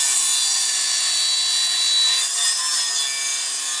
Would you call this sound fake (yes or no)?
no